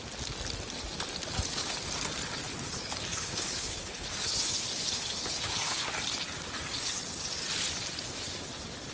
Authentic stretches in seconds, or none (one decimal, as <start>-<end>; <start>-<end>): 0.0-3.1; 5.9-8.9